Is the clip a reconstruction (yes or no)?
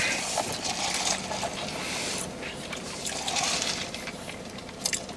no